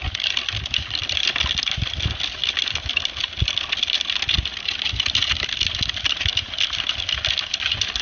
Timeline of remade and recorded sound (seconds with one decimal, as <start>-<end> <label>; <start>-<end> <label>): 0.0-1.0 recorded; 1.0-1.9 remade; 1.9-5.2 recorded; 5.2-5.8 remade; 5.8-8.0 recorded